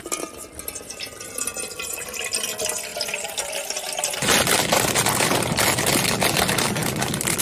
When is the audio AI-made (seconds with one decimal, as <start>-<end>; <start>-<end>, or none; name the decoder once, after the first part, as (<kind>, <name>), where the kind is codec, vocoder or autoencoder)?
none